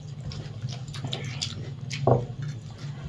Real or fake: real